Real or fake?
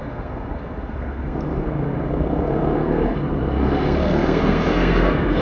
fake